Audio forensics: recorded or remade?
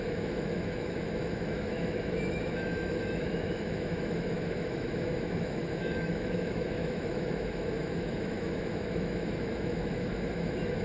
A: remade